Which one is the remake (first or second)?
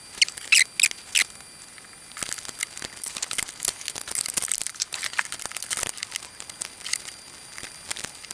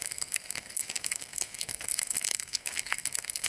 second